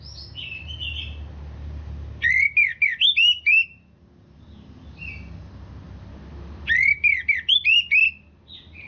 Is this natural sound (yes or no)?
yes